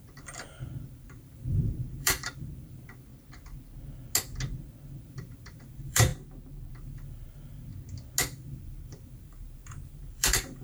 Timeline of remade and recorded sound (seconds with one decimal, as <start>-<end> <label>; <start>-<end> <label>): 0.0-3.1 remade; 3.1-5.0 recorded; 5.0-6.1 remade; 6.1-6.7 recorded; 6.7-7.7 remade; 7.7-8.5 recorded; 8.5-10.6 remade